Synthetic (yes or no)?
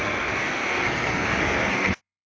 yes